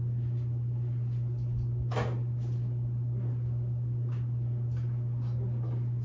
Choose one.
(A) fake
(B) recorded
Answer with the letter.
B